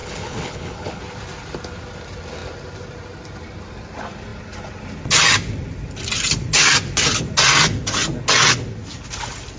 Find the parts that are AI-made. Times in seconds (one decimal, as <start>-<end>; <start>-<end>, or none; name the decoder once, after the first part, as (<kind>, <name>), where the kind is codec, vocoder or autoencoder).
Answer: 0.0-1.0 (codec, HILCodec)